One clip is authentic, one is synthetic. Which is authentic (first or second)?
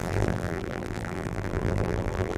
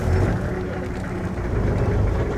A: second